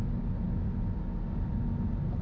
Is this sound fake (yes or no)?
no